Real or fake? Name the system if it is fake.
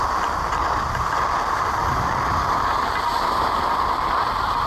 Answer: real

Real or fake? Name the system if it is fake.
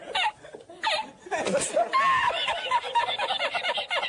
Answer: real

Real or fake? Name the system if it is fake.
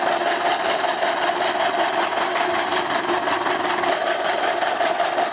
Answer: real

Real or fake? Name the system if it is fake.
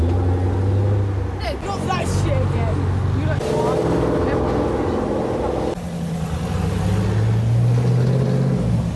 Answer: real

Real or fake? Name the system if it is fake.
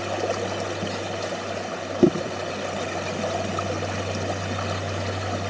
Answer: real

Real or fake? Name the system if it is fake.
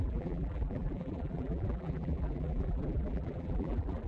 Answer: fake, vocoder, BigVGAN v2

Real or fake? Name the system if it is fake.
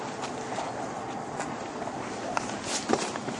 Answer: real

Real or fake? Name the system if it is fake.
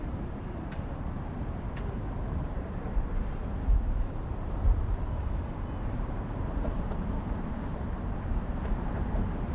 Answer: fake, vocoder, BigVGAN v2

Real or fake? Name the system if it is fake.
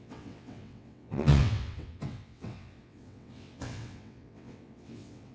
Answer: fake, vocoder, WaveNeXt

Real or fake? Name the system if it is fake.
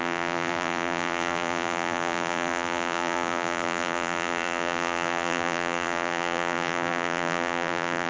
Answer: fake, vocoder, BigVGAN v2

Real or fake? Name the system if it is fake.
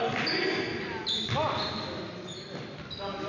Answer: real